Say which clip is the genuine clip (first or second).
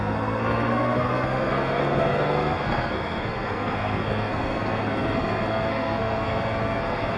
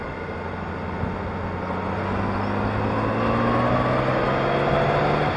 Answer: second